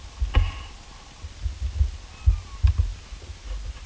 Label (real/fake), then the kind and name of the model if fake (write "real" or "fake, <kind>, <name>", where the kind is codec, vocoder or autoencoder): real